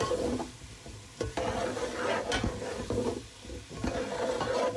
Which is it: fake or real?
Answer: real